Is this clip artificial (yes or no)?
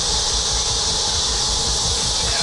no